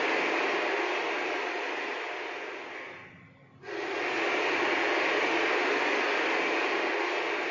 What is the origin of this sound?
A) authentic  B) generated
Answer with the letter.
A